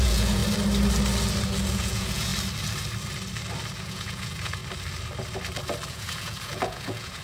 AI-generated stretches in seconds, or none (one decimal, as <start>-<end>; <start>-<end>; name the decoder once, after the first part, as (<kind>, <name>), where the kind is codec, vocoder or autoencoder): 0.0-0.4 (vocoder, Vocos); 1.7-2.3; 3.8-4.6; 5.9-7.2